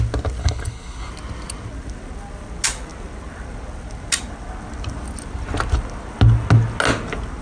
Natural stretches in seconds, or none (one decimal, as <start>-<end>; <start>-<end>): 0.0-0.4; 1.1-7.4